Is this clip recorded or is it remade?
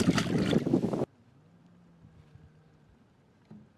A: recorded